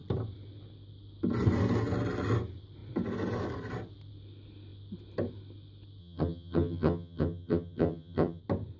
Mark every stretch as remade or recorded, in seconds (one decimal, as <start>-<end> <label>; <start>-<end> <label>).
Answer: 0.0-6.0 recorded; 6.0-8.4 remade; 8.4-8.8 recorded